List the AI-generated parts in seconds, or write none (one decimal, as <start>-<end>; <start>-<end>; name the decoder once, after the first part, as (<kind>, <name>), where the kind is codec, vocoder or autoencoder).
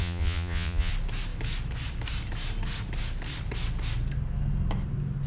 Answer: 0.0-0.9 (vocoder, Vocos)